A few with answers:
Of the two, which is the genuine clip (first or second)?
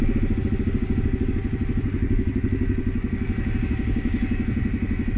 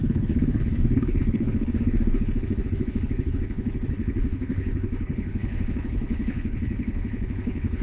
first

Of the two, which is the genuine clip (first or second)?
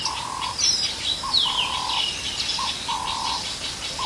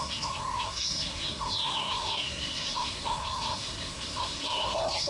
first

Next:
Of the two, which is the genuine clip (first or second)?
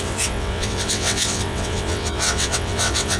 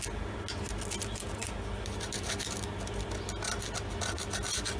second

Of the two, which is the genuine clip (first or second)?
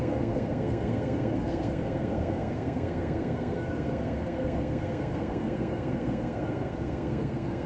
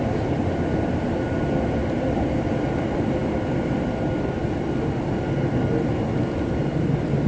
second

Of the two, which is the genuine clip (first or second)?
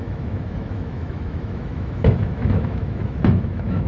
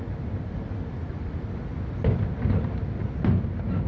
second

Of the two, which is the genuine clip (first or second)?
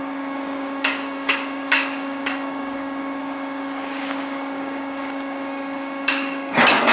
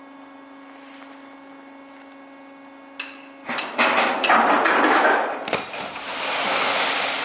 second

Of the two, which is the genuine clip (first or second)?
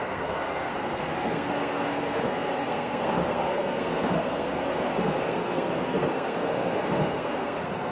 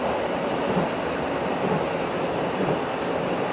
second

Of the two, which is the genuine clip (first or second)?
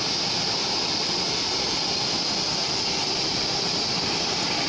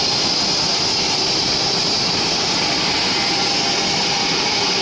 second